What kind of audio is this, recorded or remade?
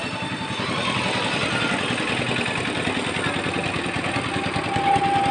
recorded